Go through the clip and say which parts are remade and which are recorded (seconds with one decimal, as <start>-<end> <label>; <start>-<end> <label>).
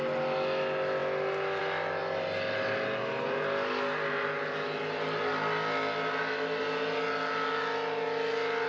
0.0-8.7 recorded